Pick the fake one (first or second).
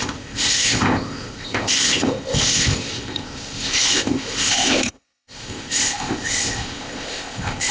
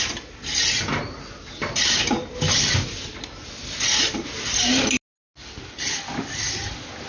first